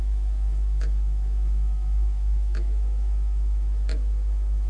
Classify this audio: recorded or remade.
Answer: remade